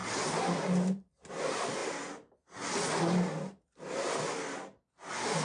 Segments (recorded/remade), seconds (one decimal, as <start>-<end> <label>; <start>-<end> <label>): 0.0-5.4 recorded